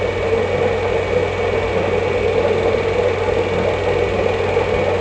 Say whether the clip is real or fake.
real